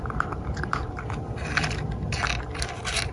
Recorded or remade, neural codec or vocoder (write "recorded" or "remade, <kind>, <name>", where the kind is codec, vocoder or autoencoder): recorded